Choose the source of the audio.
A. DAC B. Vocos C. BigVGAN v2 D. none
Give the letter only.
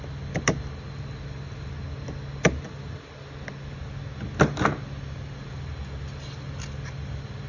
D